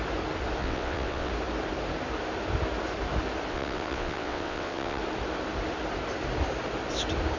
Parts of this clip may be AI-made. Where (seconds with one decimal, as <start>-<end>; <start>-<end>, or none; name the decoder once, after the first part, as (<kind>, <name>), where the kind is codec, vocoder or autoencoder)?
0.6-1.3 (vocoder, WaveNeXt); 3.5-5.0